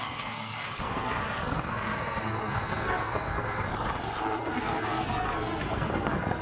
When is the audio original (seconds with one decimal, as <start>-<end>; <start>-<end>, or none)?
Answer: 3.7-4.4